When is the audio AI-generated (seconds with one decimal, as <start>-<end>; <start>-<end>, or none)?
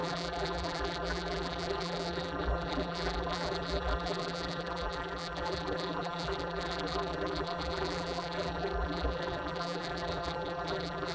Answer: 0.0-11.1